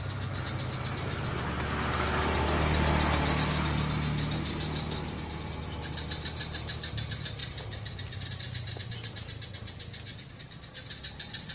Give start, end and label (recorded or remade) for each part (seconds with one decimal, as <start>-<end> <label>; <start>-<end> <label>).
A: 0.0-11.5 recorded